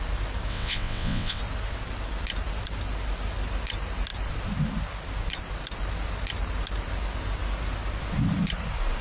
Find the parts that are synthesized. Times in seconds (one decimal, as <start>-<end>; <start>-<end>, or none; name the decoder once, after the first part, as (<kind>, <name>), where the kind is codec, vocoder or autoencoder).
0.5-1.4 (vocoder, WaveNeXt)